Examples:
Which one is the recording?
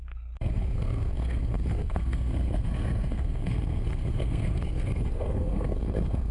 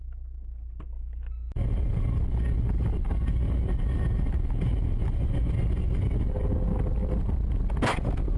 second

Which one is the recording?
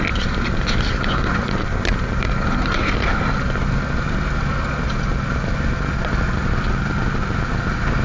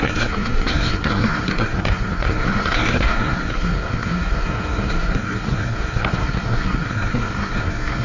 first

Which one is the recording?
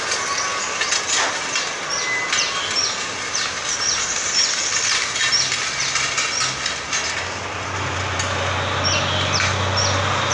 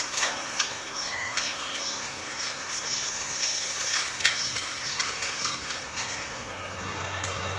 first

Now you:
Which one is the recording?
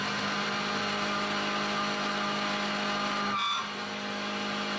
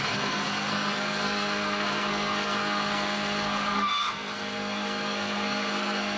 first